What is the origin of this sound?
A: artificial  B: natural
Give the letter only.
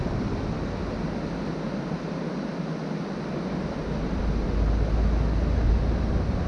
B